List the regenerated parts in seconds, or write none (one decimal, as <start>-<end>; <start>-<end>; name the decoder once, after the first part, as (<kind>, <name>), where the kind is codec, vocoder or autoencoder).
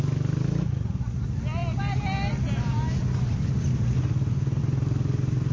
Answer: none